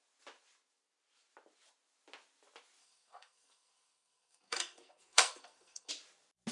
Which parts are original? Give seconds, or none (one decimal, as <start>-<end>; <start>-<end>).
0.0-2.8; 5.9-6.5